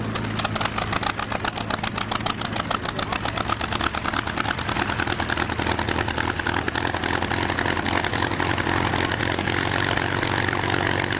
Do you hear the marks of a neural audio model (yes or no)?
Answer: no